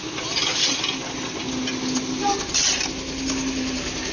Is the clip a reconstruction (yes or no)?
no